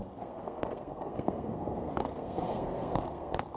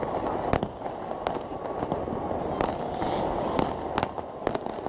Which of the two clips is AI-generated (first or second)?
first